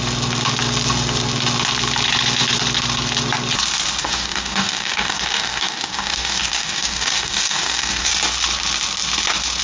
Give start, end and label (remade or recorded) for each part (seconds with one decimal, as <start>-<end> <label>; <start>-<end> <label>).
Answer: 0.0-4.0 recorded; 4.0-8.1 remade; 8.1-9.6 recorded